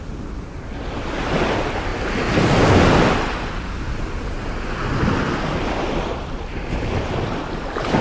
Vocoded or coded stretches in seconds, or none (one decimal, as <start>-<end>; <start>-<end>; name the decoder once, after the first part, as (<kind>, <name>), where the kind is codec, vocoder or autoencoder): none

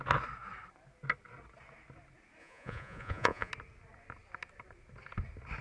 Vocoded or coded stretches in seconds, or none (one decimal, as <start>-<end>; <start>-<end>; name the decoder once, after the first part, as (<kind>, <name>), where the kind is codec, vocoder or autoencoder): 2.4-3.5 (vocoder, Vocos)

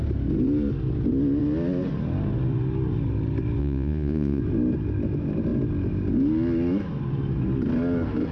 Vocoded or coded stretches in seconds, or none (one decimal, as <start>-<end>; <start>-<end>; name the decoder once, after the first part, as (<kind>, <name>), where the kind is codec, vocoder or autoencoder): 3.6-4.4 (vocoder, Vocos)

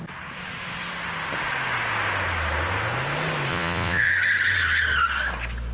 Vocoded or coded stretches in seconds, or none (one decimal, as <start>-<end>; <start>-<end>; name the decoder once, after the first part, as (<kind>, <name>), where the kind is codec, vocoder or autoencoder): 3.5-4.1 (vocoder, Vocos)

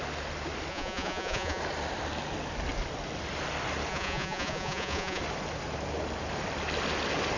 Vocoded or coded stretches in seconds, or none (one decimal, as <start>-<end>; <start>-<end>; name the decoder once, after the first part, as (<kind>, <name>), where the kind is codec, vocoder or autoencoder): 0.7-1.6 (vocoder, Vocos); 3.9-5.2

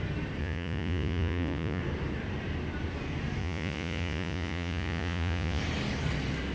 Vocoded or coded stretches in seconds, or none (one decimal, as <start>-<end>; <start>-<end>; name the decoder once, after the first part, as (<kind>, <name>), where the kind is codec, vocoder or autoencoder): 0.4-1.8 (vocoder, Vocos); 3.4-5.6

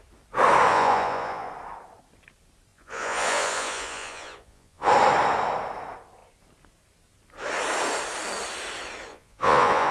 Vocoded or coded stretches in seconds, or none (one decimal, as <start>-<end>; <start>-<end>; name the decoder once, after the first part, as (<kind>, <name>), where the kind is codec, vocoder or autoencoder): 0.7-1.5 (vocoder, Vocos); 2.7-4.9; 9.1-9.9